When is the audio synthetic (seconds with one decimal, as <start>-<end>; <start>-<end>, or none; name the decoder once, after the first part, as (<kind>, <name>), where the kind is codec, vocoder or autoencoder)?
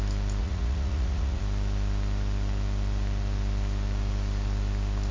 0.4-1.4 (vocoder, Vocos)